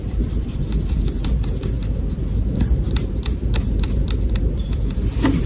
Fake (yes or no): yes